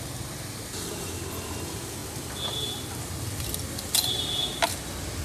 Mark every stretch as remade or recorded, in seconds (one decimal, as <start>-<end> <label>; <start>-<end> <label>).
0.0-5.2 recorded